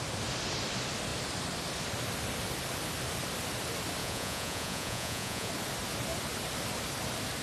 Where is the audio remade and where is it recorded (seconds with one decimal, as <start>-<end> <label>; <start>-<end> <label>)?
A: 0.0-4.0 recorded; 4.0-5.5 remade; 5.5-7.4 recorded